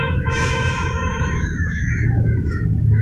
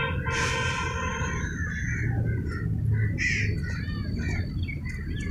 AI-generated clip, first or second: first